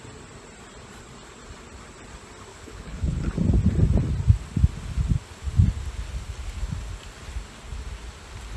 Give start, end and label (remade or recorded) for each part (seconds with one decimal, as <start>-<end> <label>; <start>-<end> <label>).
0.0-2.5 recorded; 2.5-3.2 remade; 3.2-8.6 recorded